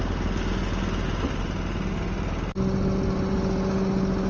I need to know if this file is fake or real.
real